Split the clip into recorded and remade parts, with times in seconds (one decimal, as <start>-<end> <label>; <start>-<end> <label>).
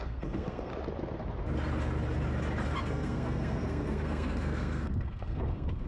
0.0-0.7 remade; 0.7-2.8 recorded; 2.8-5.9 remade